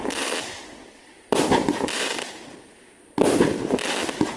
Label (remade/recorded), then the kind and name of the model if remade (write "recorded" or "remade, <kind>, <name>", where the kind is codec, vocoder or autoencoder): remade, vocoder, BigVGAN v2